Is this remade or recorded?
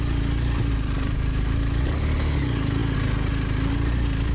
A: recorded